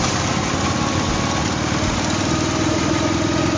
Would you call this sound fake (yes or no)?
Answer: no